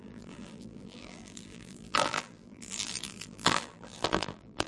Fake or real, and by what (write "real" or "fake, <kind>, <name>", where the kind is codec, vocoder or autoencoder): fake, vocoder, BigVGAN v2